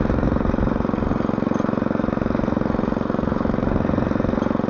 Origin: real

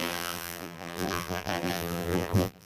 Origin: fake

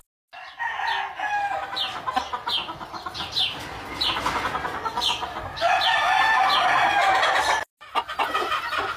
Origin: real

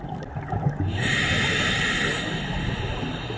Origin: real